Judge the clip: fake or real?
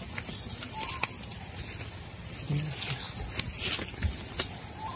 real